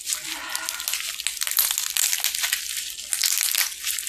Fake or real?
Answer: real